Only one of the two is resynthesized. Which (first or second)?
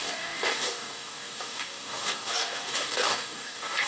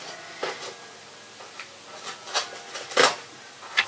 first